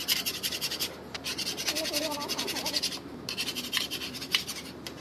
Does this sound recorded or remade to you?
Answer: recorded